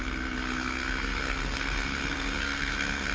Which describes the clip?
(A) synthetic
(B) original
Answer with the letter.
A